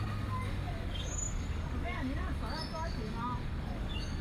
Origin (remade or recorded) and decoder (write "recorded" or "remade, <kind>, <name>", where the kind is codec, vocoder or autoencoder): remade, codec, DAC